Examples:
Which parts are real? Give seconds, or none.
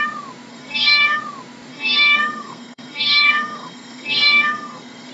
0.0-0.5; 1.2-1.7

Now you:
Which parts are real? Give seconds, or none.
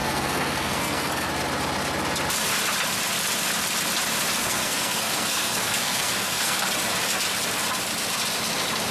1.3-4.4; 6.7-8.9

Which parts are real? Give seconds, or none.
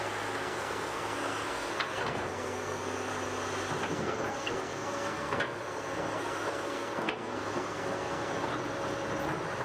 3.1-3.9; 8.5-9.6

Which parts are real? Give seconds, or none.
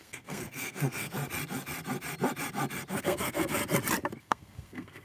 1.2-2.9; 3.6-4.2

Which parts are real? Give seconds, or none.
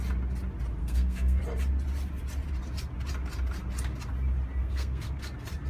0.0-0.8; 1.4-4.6; 5.2-5.7